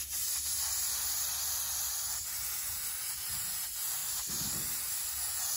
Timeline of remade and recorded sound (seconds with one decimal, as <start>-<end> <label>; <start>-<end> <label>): 0.0-3.0 recorded; 3.0-4.0 remade; 4.0-5.1 recorded; 5.1-5.6 remade